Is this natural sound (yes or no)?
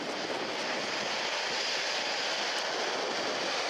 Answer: yes